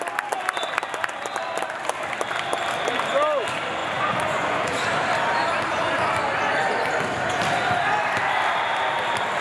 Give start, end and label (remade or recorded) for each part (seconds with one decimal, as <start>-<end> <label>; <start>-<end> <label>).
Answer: 0.0-3.8 recorded; 3.8-4.7 remade; 4.7-9.4 recorded